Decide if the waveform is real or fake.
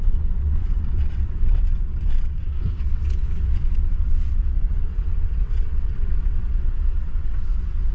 fake